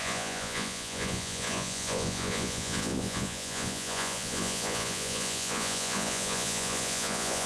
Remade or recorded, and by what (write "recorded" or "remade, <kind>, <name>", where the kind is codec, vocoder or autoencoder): remade, vocoder, Vocos